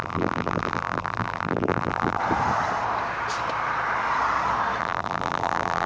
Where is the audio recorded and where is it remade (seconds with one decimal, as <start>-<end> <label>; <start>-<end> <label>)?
0.0-2.2 remade; 2.2-4.8 recorded; 4.8-5.9 remade